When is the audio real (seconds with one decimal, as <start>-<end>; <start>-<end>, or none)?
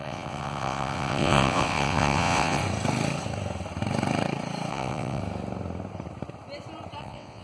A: 2.6-4.7; 5.2-7.0